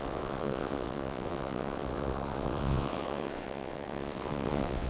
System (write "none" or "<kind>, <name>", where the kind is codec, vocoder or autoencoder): vocoder, WaveNeXt